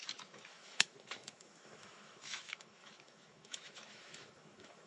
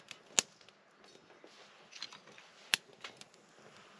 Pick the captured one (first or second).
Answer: second